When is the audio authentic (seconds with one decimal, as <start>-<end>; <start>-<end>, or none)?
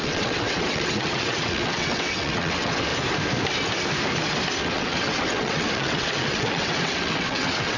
2.9-4.6